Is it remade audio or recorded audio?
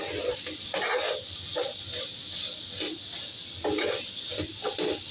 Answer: recorded